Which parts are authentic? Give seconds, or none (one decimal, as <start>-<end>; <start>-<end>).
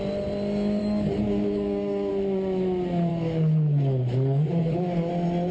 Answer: 0.0-0.8; 2.1-3.1; 5.1-5.5